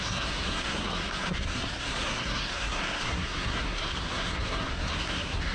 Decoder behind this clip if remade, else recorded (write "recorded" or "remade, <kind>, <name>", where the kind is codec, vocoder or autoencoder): remade, codec, SNAC